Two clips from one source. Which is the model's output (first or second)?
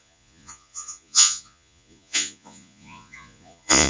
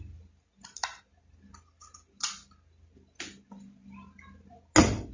first